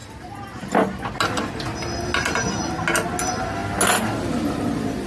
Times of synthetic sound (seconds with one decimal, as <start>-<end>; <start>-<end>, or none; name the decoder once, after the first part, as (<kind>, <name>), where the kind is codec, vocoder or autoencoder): none